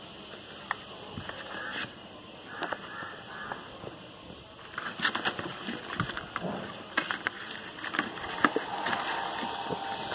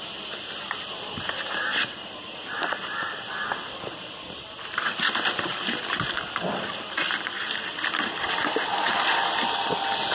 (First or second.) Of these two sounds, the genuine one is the first